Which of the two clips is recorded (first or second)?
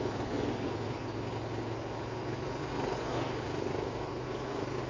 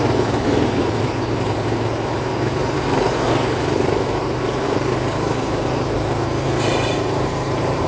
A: first